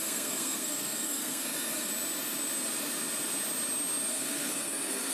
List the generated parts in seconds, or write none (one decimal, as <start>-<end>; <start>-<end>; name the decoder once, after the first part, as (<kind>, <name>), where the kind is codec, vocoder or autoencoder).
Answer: 0.0-1.9 (codec, SNAC); 4.1-5.1